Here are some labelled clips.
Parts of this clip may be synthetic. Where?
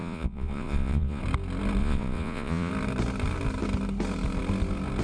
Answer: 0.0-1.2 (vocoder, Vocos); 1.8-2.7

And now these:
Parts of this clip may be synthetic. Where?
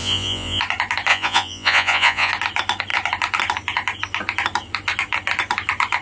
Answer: 0.0-0.6 (vocoder, Vocos); 1.1-2.3